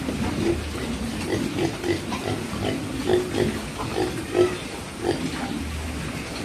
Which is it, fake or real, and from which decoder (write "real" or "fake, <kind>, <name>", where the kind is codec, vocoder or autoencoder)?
real